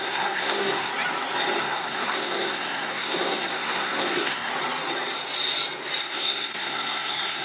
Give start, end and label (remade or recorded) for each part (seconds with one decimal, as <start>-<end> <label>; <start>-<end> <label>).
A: 0.0-0.9 remade; 0.9-1.6 recorded; 1.6-4.5 remade; 4.5-6.0 recorded; 6.0-7.4 remade